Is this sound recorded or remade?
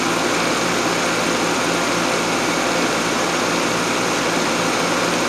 recorded